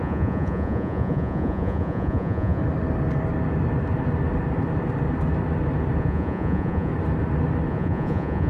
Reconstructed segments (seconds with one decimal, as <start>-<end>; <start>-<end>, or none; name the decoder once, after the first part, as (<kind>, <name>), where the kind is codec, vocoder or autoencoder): 0.0-2.6 (vocoder, Vocos); 6.0-6.9; 7.7-8.5